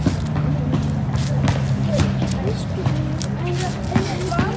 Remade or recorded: recorded